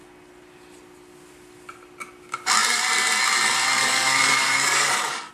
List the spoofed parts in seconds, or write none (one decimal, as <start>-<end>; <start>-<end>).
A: 3.8-5.3